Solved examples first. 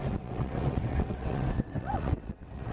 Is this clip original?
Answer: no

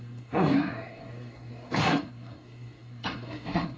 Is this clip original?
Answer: no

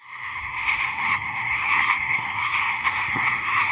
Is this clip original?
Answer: no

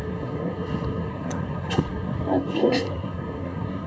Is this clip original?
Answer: no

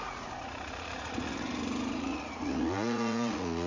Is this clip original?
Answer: no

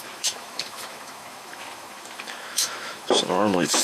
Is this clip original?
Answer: no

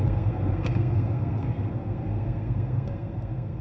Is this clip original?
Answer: no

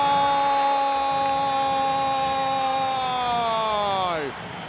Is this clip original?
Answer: yes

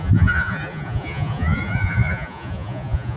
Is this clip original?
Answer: no